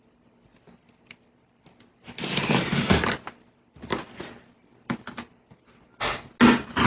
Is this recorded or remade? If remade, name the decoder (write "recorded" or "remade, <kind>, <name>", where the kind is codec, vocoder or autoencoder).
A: recorded